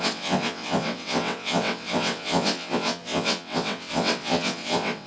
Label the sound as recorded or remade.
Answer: remade